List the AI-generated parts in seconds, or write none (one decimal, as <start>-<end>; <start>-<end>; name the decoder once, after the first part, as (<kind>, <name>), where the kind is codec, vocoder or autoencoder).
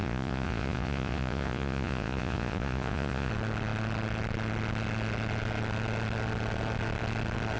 0.0-3.3 (vocoder, Vocos)